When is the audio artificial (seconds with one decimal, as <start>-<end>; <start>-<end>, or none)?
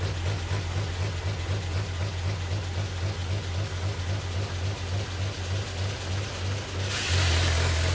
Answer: none